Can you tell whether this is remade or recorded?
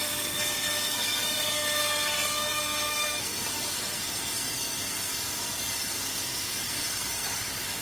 remade